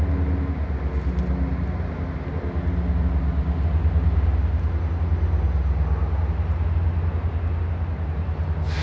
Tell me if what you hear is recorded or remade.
recorded